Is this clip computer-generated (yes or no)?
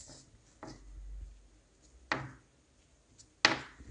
no